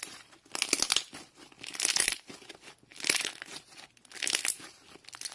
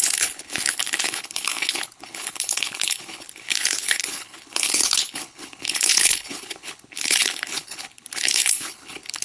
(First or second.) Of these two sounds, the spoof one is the second